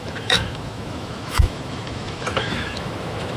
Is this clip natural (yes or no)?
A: no